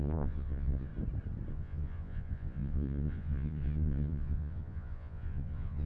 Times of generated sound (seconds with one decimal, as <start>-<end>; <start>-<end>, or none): 0.0-0.9; 1.5-5.9